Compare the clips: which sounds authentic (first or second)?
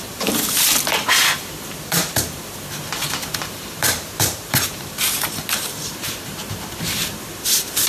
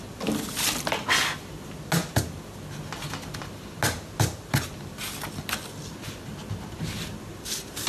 second